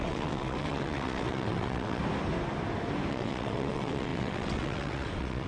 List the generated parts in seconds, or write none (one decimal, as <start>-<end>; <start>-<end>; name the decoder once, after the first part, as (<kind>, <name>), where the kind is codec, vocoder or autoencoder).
0.0-2.0 (vocoder, WaveNeXt); 3.1-5.5